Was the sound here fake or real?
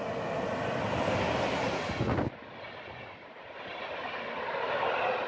real